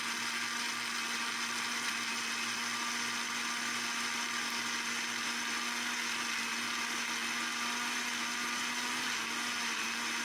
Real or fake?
real